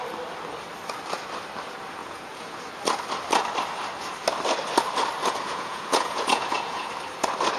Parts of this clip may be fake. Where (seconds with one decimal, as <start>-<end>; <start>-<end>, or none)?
2.0-2.7; 5.2-6.9